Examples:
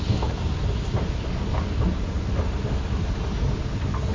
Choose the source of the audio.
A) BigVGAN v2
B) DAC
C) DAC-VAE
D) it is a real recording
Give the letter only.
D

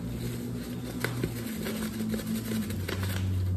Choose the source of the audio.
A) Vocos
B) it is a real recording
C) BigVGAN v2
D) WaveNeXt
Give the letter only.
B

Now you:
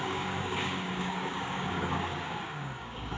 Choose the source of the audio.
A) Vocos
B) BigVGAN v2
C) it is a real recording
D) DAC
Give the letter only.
D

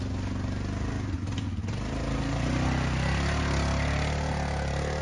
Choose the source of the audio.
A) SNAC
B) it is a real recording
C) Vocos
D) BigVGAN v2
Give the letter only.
B